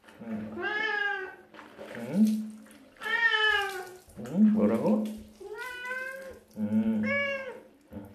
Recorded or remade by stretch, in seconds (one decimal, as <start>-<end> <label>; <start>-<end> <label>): 0.0-8.1 recorded